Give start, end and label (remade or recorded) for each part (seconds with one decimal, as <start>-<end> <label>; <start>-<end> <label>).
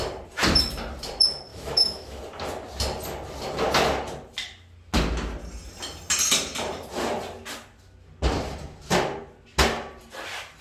0.0-1.5 recorded; 1.5-2.2 remade; 2.2-10.6 recorded